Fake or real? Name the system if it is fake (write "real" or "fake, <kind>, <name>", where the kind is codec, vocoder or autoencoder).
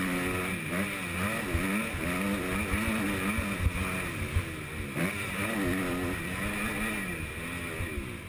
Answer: real